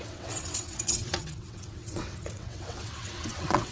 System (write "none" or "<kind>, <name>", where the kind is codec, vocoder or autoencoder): vocoder, WaveNeXt